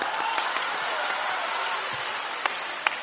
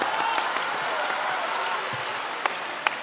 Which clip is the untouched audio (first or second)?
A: second